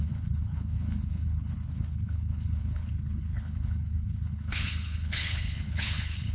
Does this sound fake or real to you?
fake